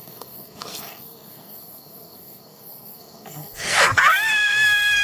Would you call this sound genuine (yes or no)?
no